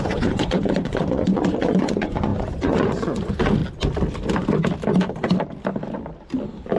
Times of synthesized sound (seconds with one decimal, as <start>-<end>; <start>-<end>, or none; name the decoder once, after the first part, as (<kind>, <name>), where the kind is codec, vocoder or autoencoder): 0.0-3.6 (vocoder, Vocos)